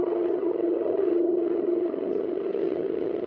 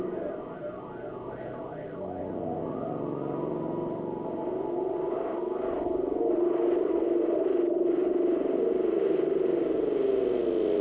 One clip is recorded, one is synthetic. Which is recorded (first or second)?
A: second